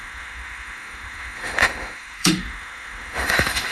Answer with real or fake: fake